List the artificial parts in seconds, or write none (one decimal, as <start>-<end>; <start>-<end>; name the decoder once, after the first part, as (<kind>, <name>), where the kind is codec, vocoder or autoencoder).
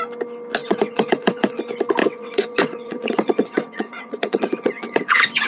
0.6-1.6 (vocoder, WaveNeXt); 2.0-5.5